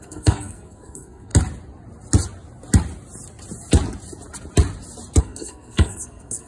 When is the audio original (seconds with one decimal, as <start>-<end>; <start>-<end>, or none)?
1.3-5.2